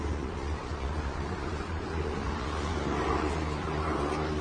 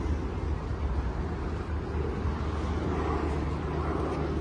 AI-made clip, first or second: first